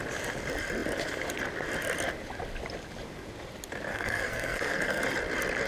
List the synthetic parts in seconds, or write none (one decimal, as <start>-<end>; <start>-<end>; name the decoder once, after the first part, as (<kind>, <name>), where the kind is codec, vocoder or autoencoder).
3.9-5.0 (codec, SNAC)